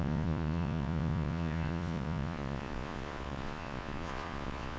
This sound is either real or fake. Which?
fake